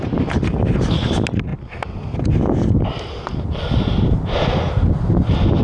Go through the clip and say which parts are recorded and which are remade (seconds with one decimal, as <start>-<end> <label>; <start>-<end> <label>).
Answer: 0.0-5.6 recorded